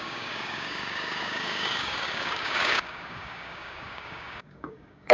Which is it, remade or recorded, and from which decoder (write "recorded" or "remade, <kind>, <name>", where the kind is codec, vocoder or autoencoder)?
remade, codec, DAC